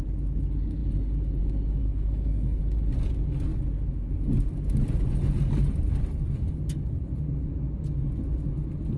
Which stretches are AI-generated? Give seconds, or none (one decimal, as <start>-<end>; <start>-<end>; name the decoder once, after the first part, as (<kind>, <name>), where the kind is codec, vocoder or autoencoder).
1.8-2.6 (codec, SNAC)